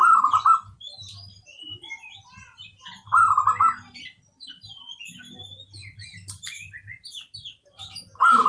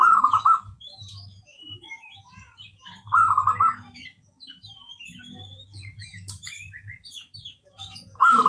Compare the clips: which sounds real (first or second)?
first